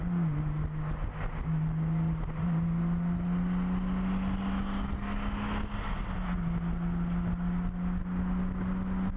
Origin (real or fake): real